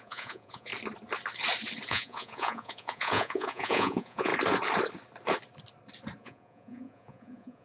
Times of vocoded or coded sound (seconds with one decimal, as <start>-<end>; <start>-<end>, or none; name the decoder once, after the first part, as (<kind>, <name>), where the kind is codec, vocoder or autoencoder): 0.0-0.7 (vocoder, Vocos); 1.9-4.3; 6.2-7.6